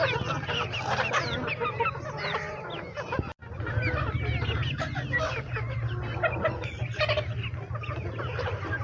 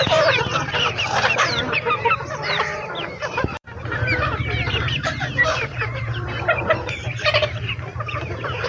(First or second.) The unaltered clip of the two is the first